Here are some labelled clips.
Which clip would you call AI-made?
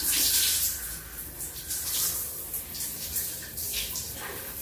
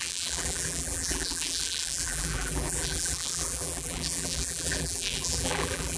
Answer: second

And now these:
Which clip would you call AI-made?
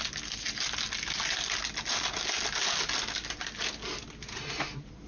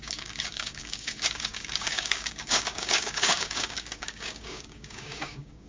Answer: second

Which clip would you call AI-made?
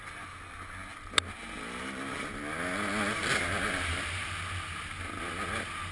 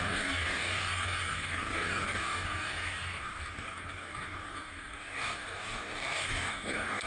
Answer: second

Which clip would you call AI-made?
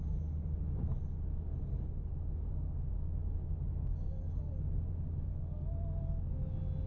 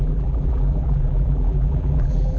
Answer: second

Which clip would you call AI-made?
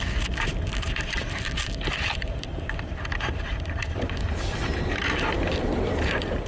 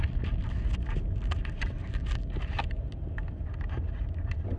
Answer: first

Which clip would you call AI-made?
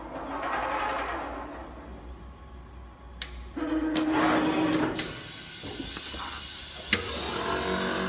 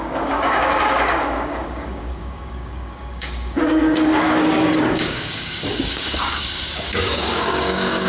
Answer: second